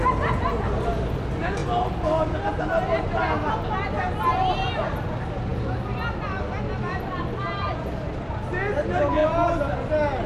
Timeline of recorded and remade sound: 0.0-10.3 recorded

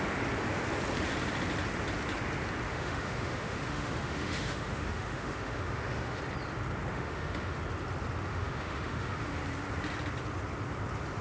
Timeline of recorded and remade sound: 0.0-2.7 recorded; 2.7-6.2 remade; 6.2-6.9 recorded; 6.9-7.6 remade; 7.6-8.3 recorded; 8.3-9.4 remade; 9.4-11.2 recorded